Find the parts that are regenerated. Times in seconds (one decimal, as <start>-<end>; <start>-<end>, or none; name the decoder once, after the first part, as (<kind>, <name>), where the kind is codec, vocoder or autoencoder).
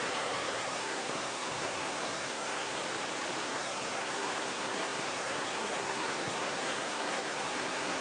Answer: 0.0-2.8 (codec, SNAC); 3.4-8.0